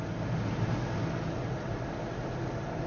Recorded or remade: recorded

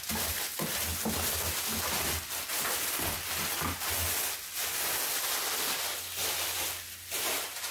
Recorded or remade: recorded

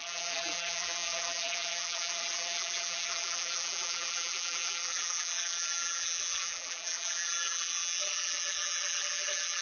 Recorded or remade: remade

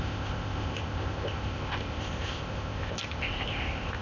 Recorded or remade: remade